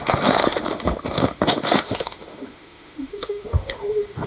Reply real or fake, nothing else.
fake